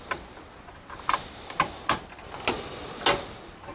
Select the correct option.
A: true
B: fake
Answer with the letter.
A